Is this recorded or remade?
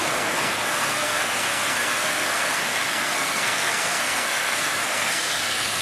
remade